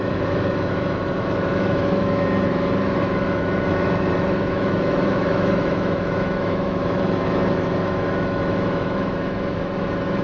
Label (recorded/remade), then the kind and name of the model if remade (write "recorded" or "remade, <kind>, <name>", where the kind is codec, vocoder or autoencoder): remade, autoencoder, DAC-VAE